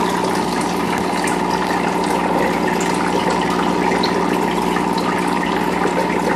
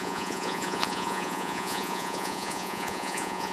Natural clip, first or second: first